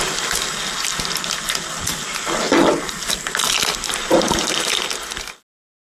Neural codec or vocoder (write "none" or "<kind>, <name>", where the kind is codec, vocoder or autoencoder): none